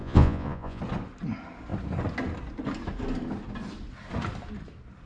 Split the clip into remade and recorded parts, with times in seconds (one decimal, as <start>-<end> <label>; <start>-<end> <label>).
0.0-0.8 remade; 0.8-5.1 recorded